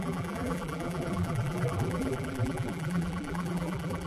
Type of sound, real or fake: fake